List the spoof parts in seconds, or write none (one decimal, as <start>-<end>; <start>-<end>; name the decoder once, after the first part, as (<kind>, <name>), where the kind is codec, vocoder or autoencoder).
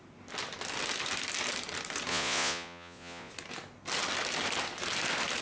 2.1-3.3 (vocoder, Vocos)